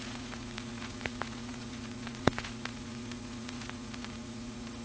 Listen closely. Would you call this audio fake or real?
fake